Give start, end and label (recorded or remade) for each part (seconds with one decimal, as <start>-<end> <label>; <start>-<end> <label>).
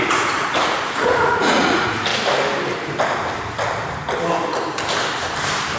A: 0.0-2.1 remade; 2.1-5.8 recorded